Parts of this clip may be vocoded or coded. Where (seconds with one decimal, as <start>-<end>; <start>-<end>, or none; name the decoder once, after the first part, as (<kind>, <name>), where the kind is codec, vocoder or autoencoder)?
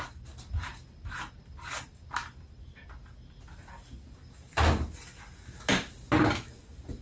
none